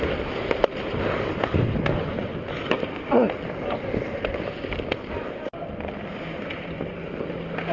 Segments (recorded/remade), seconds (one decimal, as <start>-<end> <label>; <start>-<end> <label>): 0.0-7.7 recorded